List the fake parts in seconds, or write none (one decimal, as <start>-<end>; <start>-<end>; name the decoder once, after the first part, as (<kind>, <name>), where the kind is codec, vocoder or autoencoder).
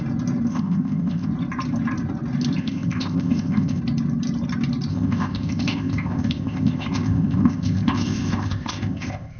0.5-1.3 (codec, ZipCodec); 2.6-3.8; 4.9-9.4